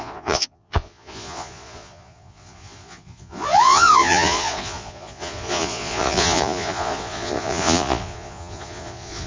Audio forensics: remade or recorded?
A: remade